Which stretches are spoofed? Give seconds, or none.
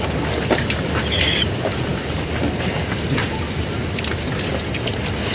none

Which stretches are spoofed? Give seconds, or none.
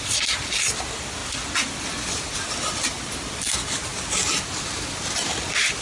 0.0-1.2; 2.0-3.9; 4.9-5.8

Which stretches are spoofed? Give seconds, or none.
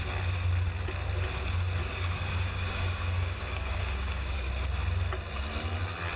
1.8-4.5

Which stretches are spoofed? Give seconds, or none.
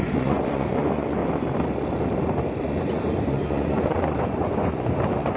0.0-1.2; 2.6-5.4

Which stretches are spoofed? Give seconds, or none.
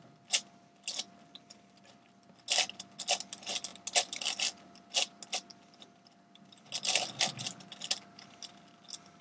none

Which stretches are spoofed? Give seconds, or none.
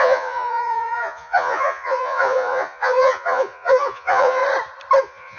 0.0-4.4; 5.0-5.4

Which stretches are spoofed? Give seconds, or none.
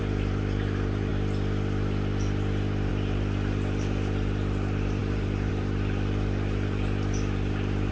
0.0-1.1; 2.9-7.9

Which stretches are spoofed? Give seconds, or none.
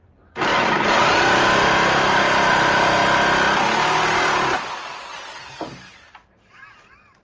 0.0-3.0; 5.4-7.2